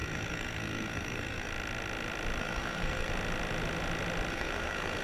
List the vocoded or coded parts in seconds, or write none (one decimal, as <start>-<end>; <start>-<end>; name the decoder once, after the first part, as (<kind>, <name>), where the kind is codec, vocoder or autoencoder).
0.0-1.5 (codec, SNAC); 2.4-3.1; 4.3-5.0